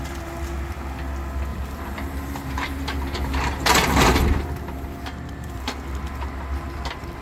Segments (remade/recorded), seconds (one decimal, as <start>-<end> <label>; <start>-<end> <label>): 0.0-1.5 recorded; 1.5-5.7 remade; 5.7-7.2 recorded